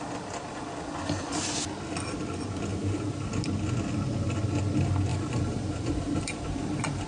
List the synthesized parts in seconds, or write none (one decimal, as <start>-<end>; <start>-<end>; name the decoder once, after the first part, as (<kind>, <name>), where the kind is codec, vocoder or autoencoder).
2.7-3.2 (vocoder, BigVGAN v2); 5.1-7.1